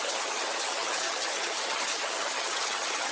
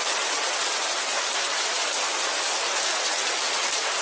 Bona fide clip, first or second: second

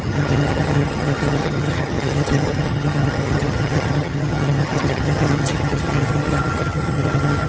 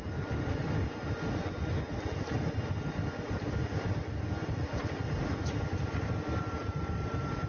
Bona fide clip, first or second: second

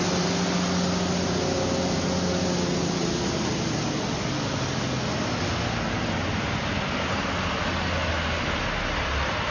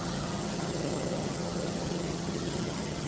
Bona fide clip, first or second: first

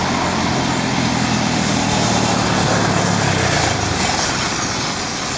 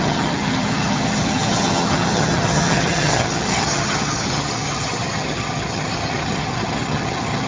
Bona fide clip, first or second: first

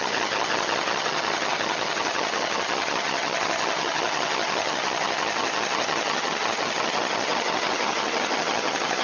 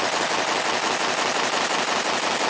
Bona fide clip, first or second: second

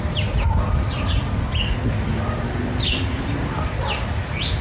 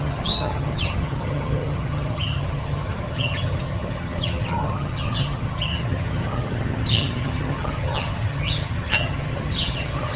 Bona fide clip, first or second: first